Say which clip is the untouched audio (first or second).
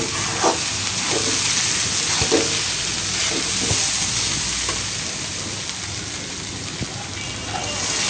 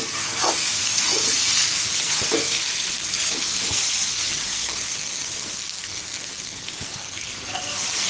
first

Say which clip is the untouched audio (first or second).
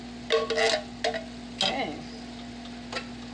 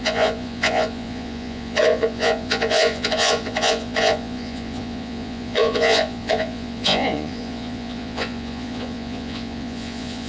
first